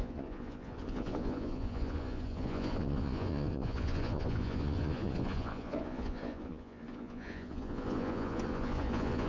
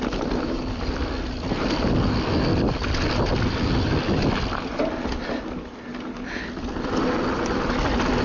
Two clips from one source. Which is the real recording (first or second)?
second